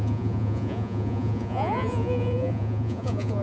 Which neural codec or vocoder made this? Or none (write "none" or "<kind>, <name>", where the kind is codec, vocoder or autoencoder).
vocoder, Vocos